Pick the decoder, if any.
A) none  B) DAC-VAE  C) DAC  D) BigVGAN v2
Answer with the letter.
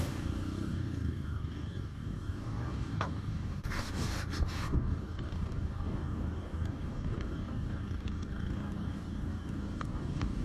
C